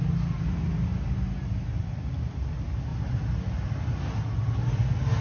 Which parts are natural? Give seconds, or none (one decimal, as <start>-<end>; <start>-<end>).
0.0-5.2

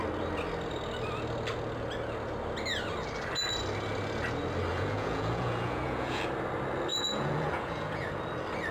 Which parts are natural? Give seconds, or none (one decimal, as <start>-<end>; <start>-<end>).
0.0-4.7; 6.2-6.9; 8.2-8.7